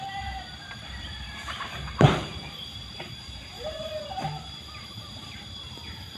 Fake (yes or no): yes